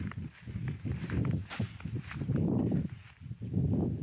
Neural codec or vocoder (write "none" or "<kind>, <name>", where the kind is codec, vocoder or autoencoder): none